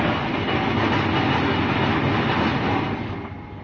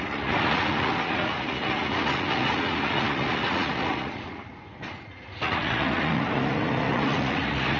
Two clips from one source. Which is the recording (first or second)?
first